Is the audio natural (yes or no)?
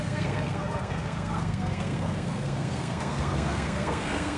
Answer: no